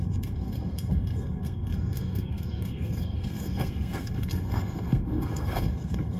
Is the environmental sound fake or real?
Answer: fake